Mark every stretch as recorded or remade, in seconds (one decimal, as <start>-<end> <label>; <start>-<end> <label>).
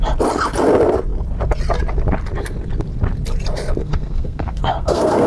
0.0-3.8 recorded; 3.8-5.3 remade